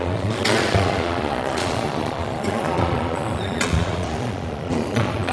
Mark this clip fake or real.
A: fake